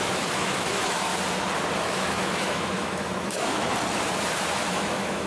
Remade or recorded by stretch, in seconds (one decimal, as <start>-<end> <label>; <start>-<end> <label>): 0.0-1.1 remade; 1.1-1.8 recorded; 1.8-3.7 remade; 3.7-4.7 recorded; 4.7-5.3 remade